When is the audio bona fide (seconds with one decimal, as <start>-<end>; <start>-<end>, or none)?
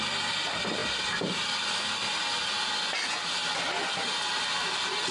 0.0-5.1